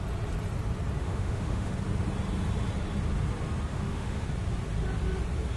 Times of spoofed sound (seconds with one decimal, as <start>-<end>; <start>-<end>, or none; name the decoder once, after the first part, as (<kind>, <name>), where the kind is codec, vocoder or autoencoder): 1.0-1.7 (autoencoder, DAC-VAE); 3.7-4.2